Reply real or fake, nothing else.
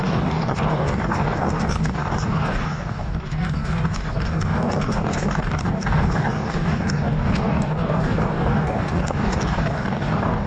fake